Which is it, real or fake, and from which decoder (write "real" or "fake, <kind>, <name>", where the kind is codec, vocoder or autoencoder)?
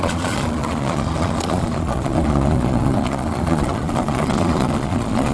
fake, vocoder, Vocos